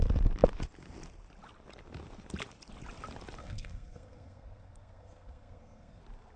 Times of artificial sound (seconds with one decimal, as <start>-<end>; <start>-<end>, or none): 3.4-6.0